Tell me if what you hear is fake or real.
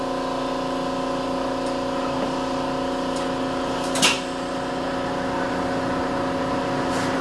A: real